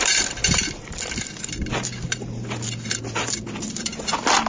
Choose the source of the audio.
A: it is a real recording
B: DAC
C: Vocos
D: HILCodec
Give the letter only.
A